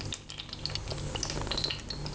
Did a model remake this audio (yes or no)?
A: no